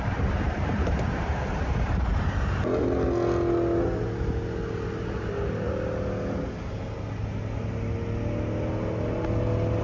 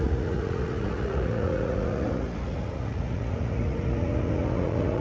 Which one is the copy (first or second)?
second